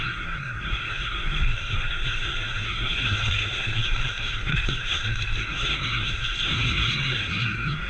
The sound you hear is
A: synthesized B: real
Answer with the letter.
A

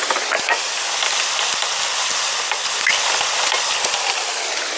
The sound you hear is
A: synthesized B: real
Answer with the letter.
B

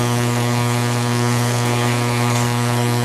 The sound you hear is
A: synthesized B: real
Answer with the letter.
A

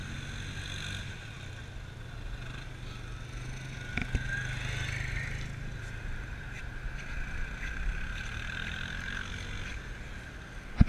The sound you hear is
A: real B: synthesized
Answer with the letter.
A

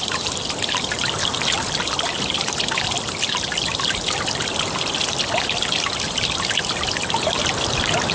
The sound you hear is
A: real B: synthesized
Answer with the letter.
A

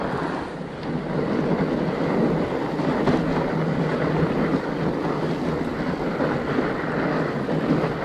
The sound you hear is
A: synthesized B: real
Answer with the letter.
B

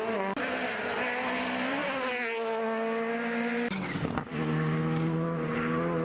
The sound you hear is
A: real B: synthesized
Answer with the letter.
A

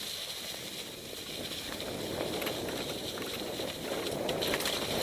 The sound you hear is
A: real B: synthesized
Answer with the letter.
A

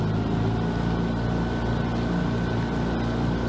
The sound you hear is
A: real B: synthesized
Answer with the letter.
A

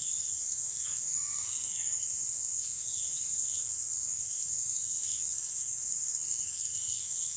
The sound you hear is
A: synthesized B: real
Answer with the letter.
A